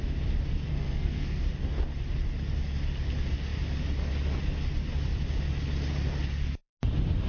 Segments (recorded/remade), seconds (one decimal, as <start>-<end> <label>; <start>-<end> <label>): 0.0-0.7 recorded; 0.7-1.4 remade; 1.4-7.3 recorded